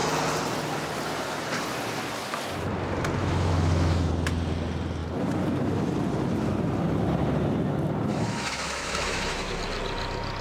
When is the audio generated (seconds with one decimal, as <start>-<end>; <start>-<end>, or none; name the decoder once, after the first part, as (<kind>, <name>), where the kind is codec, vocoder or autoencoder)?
3.2-4.1 (autoencoder, DAC-VAE); 8.1-9.5